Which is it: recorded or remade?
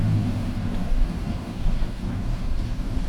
remade